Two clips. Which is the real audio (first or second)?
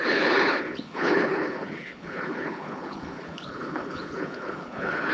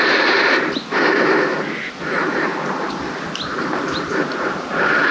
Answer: second